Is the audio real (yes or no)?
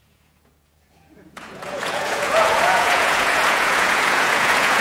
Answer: no